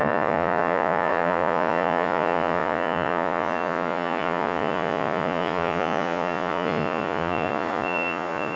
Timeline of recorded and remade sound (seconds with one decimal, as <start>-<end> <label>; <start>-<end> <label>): 0.0-8.6 remade